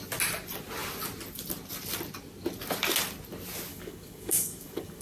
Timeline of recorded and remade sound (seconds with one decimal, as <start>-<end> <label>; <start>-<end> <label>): 0.0-3.7 recorded; 3.7-5.0 remade